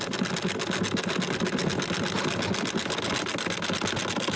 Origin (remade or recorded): recorded